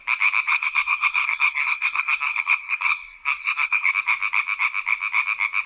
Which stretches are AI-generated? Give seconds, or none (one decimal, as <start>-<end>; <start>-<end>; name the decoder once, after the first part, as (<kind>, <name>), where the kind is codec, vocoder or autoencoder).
0.5-3.9 (codec, SNAC)